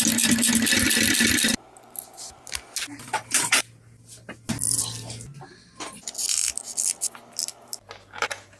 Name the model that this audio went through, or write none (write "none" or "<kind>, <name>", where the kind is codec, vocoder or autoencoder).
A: none